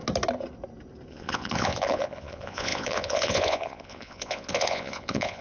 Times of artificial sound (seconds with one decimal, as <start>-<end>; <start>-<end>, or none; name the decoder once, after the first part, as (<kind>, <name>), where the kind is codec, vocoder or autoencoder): 1.1-5.4 (vocoder, Vocos)